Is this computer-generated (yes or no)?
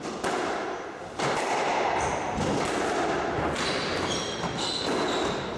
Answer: no